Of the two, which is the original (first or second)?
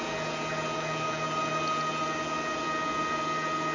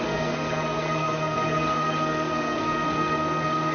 first